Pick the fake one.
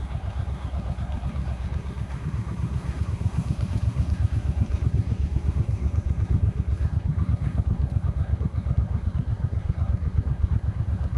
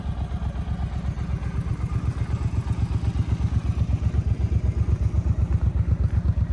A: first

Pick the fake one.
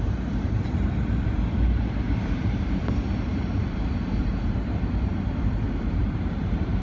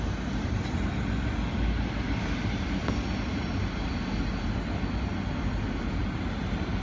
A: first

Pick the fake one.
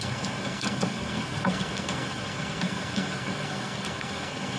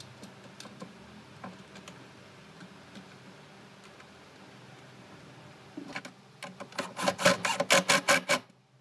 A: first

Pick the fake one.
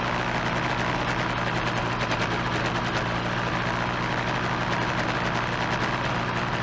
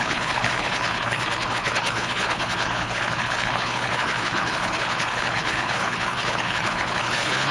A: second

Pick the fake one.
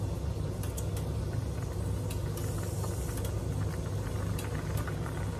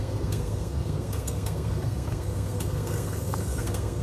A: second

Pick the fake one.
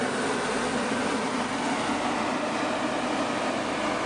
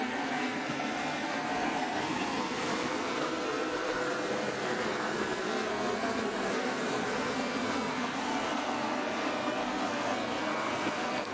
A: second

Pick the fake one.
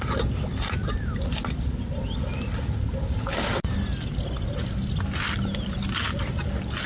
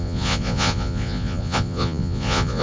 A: second